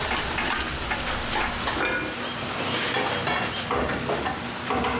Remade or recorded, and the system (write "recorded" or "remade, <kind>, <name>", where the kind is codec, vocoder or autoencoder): recorded